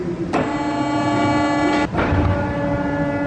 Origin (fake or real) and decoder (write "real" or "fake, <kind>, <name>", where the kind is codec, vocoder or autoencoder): real